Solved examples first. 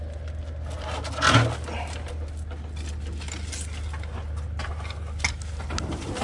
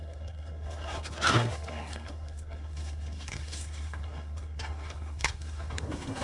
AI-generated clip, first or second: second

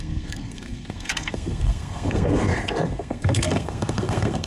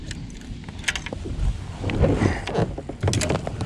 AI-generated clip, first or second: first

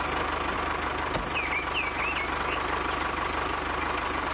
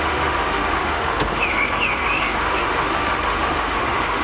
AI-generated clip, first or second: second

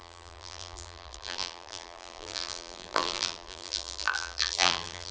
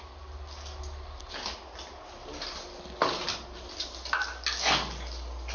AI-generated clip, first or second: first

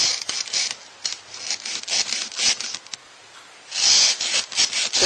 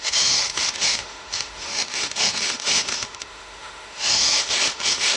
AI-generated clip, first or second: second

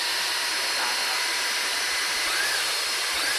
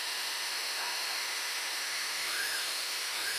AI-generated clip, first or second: second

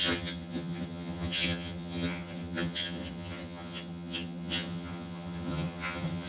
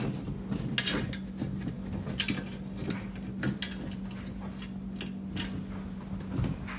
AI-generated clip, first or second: first